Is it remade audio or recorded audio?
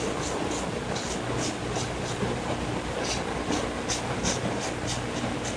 recorded